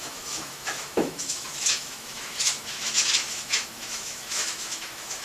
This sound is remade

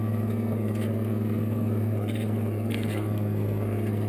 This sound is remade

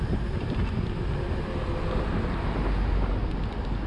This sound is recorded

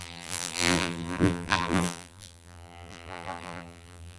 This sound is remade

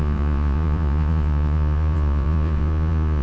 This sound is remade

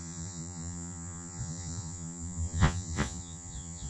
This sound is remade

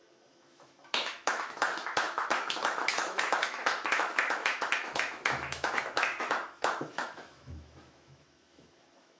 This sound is remade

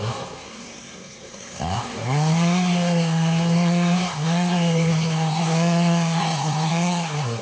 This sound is remade